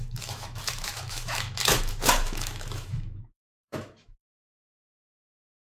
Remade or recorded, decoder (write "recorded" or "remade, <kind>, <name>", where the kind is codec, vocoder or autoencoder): remade, autoencoder, DAC-VAE